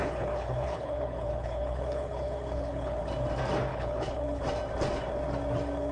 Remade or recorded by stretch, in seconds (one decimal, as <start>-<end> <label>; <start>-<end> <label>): 0.0-3.0 remade; 3.0-3.7 recorded; 3.7-4.4 remade; 4.4-5.9 recorded